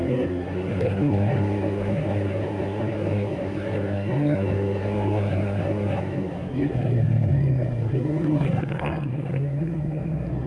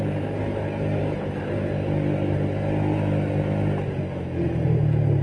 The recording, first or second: second